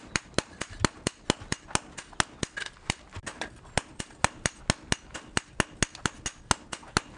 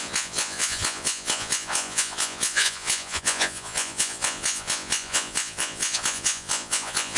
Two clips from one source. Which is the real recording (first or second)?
first